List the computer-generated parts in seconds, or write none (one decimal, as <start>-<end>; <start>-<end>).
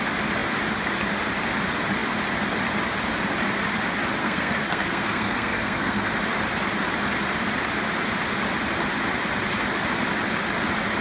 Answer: 4.2-6.1